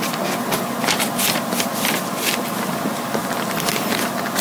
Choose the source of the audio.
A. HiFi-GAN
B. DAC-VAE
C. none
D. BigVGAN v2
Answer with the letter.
C